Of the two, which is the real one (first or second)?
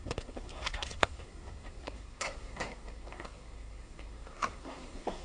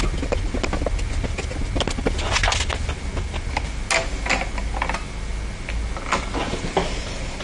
second